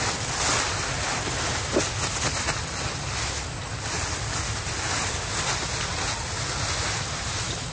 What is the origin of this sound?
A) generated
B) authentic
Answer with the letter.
B